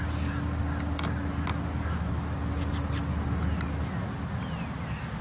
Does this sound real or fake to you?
real